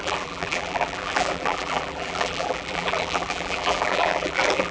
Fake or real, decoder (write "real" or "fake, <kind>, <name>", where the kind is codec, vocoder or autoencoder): fake, vocoder, BigVGAN v2